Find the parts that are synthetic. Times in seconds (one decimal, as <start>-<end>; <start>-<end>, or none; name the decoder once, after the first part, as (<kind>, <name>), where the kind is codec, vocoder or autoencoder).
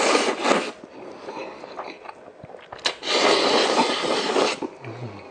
none